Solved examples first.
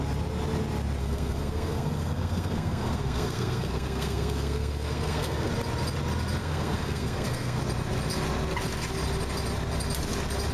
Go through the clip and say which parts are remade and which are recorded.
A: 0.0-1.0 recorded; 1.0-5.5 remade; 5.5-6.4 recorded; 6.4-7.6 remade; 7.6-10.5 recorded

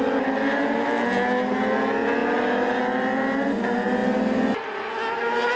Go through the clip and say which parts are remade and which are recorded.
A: 0.0-5.6 recorded

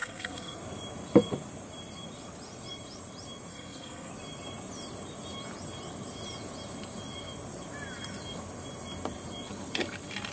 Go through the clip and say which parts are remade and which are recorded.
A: 0.0-0.6 remade; 0.6-3.5 recorded; 3.5-4.1 remade; 4.1-10.3 recorded

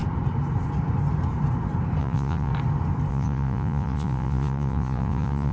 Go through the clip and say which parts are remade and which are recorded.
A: 0.0-2.0 recorded; 2.0-2.5 remade; 2.5-3.1 recorded; 3.1-5.5 remade

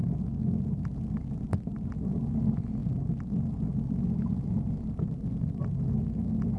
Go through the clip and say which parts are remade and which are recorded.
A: 0.0-6.6 recorded

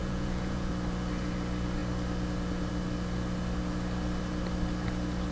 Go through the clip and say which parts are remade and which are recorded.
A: 0.0-0.7 remade; 0.7-5.3 recorded